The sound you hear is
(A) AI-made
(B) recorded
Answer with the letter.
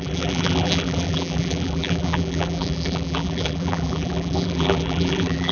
A